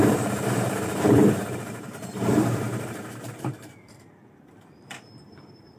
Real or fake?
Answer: fake